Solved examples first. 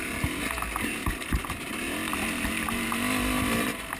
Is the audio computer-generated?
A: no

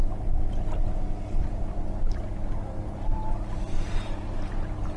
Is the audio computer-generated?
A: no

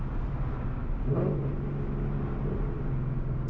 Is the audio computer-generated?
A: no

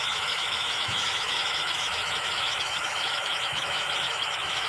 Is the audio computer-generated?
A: yes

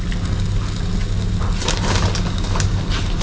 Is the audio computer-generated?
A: no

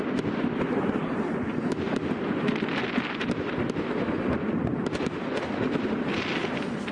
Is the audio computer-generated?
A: no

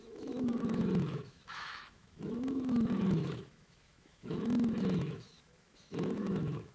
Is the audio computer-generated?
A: yes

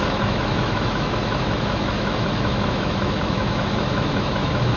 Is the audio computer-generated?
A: yes